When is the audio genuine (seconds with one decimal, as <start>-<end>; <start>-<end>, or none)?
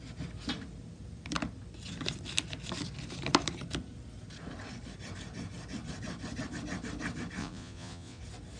0.0-7.4; 8.2-8.6